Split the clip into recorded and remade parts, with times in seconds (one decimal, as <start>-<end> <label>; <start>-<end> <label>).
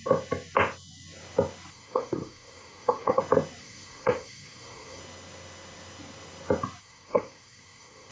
0.0-1.7 recorded; 1.7-3.2 remade; 3.2-3.6 recorded; 3.6-5.0 remade; 5.0-6.8 recorded; 6.8-8.1 remade